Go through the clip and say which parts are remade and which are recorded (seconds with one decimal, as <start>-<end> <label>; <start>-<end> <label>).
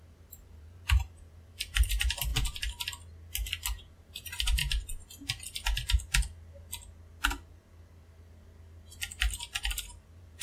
0.0-2.3 remade; 2.3-3.9 recorded; 3.9-4.6 remade; 4.6-9.6 recorded; 9.6-10.4 remade